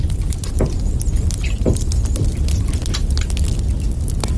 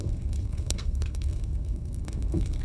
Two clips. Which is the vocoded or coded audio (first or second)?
second